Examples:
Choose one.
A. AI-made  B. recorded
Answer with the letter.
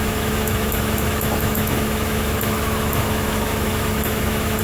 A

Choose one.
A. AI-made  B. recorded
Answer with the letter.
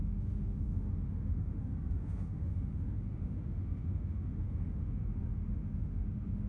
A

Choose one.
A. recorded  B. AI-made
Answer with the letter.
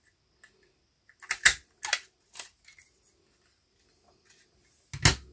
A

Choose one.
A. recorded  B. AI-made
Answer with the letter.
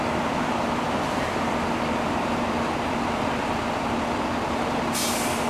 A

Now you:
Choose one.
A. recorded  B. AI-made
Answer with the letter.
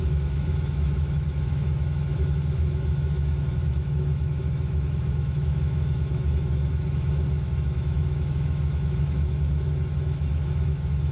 B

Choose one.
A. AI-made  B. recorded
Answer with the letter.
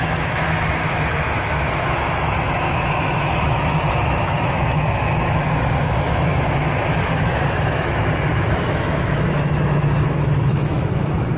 A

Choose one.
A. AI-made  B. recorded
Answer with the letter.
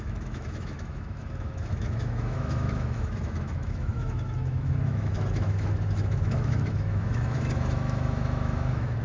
A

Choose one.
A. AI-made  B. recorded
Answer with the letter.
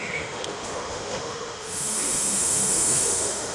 A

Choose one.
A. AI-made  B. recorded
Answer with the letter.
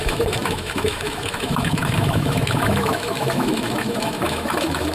A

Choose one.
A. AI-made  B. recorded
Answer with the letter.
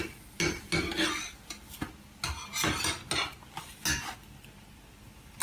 B